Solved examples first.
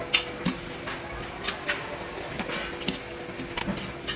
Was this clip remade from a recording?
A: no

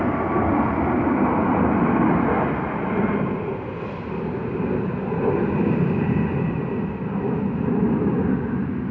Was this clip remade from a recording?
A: no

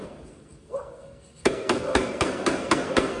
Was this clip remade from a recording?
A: yes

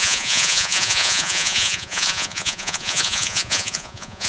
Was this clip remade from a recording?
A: yes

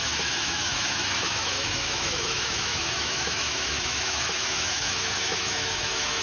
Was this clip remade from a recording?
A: yes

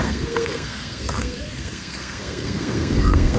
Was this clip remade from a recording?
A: yes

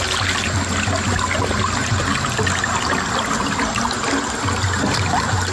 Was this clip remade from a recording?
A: no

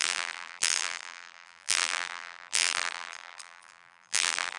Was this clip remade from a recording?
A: yes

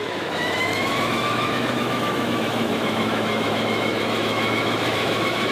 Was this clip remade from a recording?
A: yes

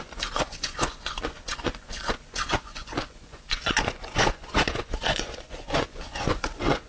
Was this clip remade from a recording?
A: yes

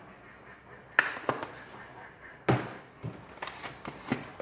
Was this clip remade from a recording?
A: no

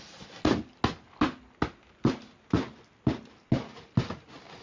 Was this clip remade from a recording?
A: no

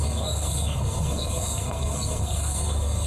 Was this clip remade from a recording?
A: yes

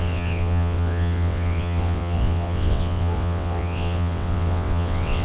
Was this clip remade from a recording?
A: yes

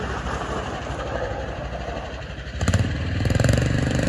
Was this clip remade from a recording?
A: yes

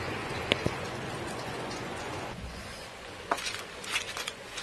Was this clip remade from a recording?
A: yes